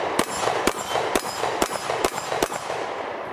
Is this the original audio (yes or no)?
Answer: no